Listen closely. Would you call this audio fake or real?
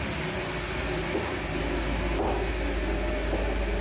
real